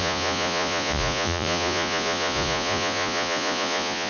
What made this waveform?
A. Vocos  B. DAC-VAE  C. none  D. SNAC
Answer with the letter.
A